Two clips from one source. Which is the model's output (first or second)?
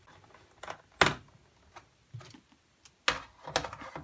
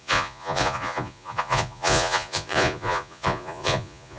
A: second